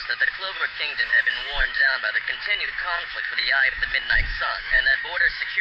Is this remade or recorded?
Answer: remade